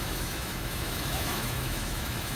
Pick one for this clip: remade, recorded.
remade